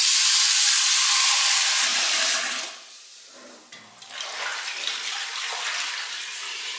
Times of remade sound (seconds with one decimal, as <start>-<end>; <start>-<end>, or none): 1.9-2.7; 4.5-6.1